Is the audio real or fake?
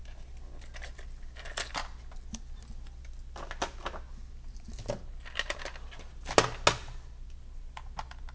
real